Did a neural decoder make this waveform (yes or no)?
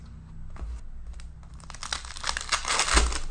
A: no